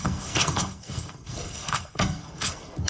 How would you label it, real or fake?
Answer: fake